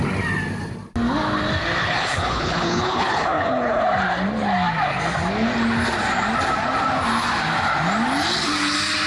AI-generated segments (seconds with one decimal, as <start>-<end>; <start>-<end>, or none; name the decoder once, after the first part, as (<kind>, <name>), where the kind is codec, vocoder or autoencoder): 1.8-3.8 (codec, HILCodec)